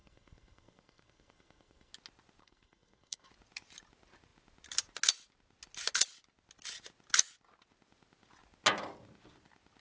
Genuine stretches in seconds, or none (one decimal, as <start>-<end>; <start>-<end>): 1.9-2.4; 3.3-9.8